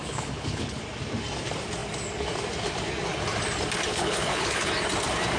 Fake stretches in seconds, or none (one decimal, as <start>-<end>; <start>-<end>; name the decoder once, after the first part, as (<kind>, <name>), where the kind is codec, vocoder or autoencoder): 0.0-0.8 (codec, HILCodec); 3.9-4.7